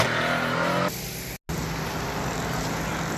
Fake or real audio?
real